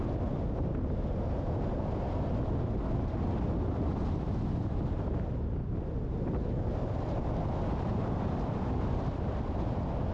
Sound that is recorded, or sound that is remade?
recorded